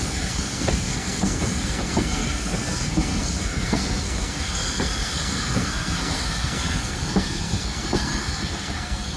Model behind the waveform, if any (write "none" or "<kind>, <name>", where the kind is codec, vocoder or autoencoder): codec, SNAC